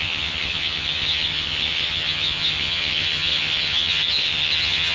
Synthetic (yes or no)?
yes